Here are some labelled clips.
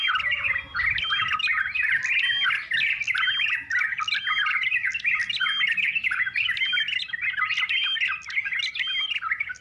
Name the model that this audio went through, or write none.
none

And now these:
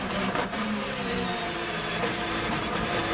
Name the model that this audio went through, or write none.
vocoder, BigVGAN v2